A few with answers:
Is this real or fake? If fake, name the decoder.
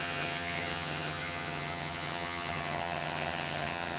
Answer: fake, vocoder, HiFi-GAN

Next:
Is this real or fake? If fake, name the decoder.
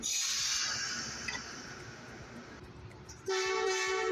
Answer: real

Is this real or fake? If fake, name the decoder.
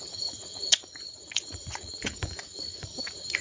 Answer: fake, vocoder, Vocos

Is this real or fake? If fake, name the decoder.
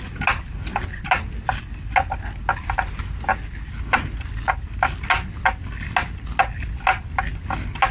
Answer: real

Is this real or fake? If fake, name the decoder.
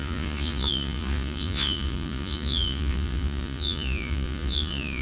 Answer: fake, vocoder, Vocos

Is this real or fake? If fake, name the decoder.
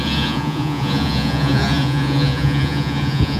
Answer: fake, vocoder, Vocos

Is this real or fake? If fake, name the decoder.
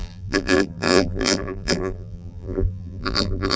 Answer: fake, vocoder, BigVGAN v2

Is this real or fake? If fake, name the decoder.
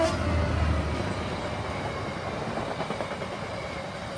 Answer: real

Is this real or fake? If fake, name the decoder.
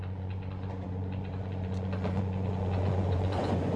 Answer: fake, vocoder, Vocos